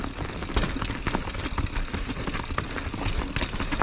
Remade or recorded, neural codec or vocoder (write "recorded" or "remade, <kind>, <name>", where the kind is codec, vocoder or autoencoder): recorded